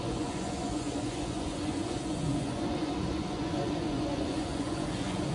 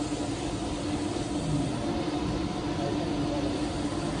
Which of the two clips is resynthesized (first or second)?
first